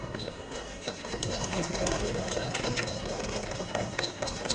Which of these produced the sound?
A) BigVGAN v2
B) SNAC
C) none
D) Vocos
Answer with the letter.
B